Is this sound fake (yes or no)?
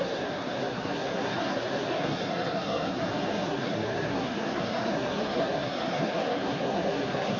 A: yes